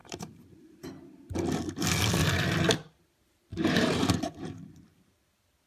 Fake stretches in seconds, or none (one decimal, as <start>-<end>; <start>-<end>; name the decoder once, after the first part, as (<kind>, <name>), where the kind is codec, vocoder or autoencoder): 0.0-0.9 (vocoder, BigVGAN v2); 3.5-5.2